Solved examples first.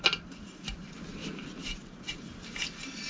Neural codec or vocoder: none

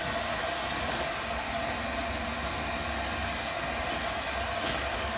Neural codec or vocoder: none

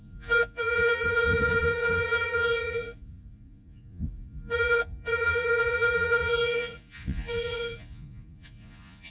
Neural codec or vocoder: vocoder, Vocos